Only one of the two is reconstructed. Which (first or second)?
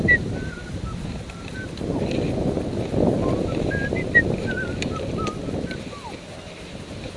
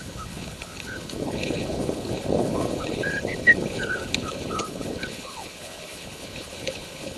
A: second